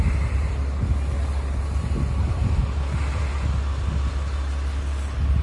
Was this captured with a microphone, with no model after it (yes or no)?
yes